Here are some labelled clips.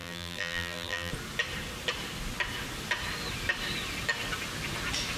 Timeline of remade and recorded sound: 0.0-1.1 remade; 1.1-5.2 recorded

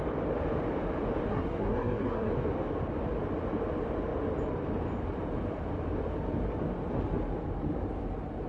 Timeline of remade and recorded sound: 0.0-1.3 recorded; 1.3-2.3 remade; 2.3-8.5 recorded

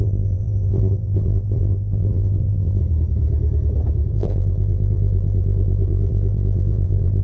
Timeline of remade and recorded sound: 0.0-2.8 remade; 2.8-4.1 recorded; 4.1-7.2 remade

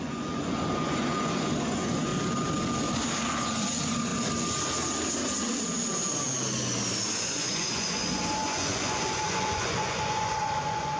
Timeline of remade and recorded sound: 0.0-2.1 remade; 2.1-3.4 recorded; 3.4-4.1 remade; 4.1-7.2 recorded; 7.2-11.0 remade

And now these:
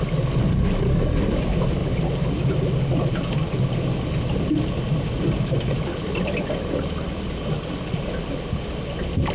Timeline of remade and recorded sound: 0.0-9.3 recorded